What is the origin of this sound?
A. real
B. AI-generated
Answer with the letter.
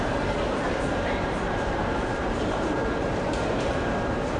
B